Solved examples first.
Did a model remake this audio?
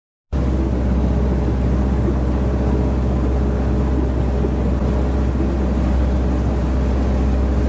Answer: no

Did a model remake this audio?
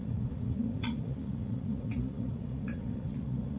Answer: yes